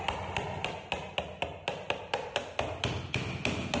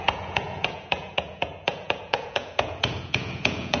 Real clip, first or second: first